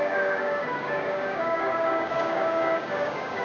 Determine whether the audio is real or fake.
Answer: fake